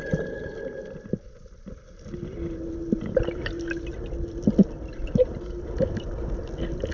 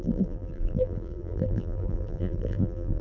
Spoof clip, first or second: second